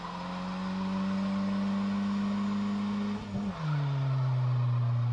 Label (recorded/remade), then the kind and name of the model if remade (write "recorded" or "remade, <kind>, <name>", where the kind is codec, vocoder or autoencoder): recorded